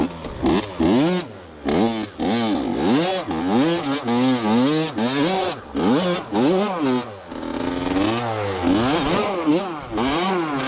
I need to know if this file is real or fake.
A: real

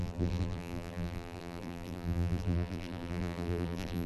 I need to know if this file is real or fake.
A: fake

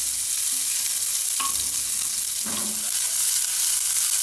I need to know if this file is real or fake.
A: real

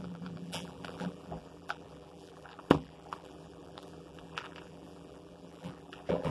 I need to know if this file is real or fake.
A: fake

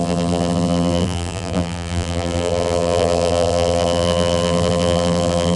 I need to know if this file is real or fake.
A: fake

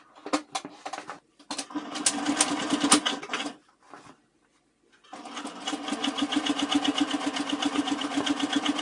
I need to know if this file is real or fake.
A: real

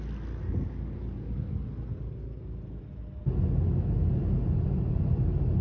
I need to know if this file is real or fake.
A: real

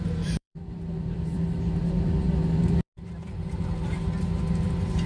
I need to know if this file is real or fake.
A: fake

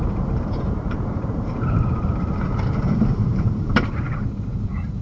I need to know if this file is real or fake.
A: fake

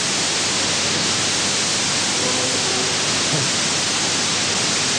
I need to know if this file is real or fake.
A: real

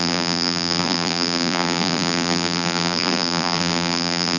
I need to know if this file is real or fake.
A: fake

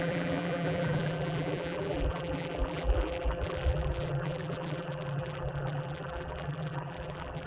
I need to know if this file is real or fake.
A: fake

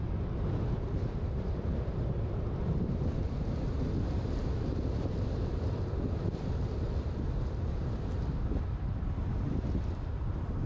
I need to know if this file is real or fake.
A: fake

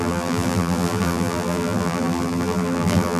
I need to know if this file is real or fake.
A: fake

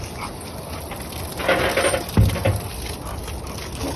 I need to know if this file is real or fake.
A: real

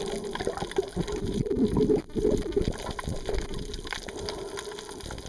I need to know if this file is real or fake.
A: real